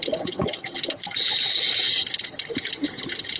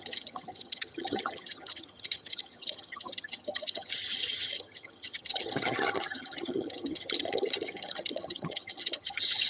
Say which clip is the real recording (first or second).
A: first